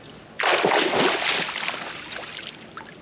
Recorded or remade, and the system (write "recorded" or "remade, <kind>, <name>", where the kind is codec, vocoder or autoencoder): recorded